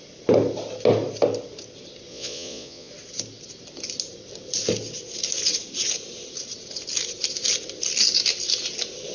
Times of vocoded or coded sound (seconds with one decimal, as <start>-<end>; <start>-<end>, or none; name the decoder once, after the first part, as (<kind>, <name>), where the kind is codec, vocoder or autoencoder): 2.1-2.9 (vocoder, Vocos)